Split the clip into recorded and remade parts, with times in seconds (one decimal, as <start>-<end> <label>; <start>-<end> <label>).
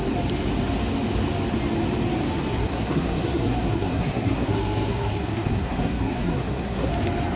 0.0-2.5 recorded; 2.5-6.9 remade; 6.9-7.4 recorded